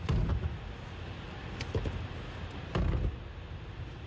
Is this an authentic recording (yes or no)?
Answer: yes